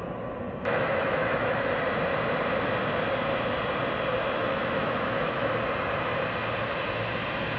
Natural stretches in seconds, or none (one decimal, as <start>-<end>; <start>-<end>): 0.0-0.7; 1.7-4.4; 5.5-7.6